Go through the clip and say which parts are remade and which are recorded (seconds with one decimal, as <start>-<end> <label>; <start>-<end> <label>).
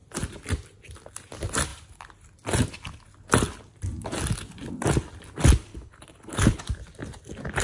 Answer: 0.0-5.7 recorded; 5.7-6.6 remade; 6.6-7.6 recorded